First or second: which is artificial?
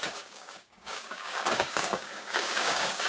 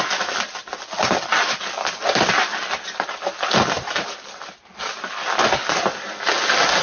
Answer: first